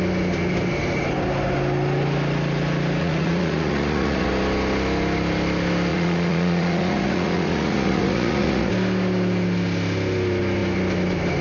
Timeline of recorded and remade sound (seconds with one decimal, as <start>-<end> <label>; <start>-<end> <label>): 0.0-3.0 recorded; 3.0-4.3 remade; 4.3-5.9 recorded; 5.9-8.7 remade; 8.7-11.4 recorded